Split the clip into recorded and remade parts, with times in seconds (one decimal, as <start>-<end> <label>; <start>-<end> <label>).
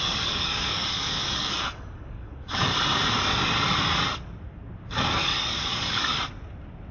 0.0-2.7 remade; 2.7-5.1 recorded; 5.1-6.1 remade; 6.1-6.9 recorded